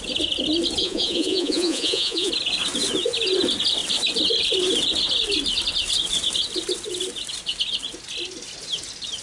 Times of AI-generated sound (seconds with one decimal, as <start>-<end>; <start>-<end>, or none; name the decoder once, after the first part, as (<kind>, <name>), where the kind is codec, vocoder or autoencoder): 0.8-2.3 (vocoder, Vocos)